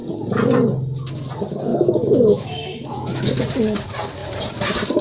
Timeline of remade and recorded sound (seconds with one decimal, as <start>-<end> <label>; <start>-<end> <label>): 0.0-1.7 recorded; 1.7-3.3 remade; 3.3-5.0 recorded